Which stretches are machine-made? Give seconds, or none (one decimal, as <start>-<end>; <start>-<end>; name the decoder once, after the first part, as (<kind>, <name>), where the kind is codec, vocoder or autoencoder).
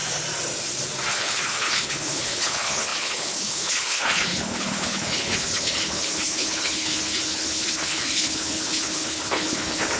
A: 1.1-10.0 (codec, HILCodec)